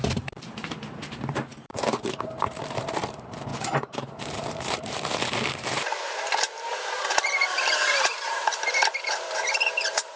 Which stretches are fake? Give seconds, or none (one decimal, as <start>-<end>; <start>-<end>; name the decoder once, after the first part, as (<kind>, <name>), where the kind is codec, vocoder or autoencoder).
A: 0.0-10.2 (vocoder, BigVGAN v2)